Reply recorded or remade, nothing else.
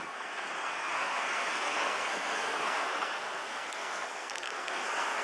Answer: remade